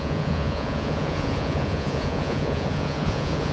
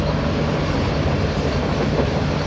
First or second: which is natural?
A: second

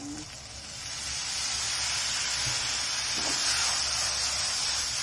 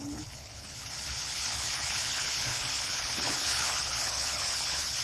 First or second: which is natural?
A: first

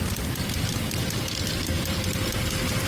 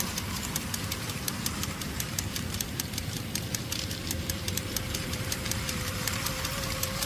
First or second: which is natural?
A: first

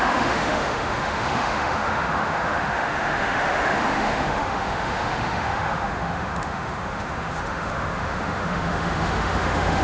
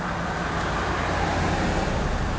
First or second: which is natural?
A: second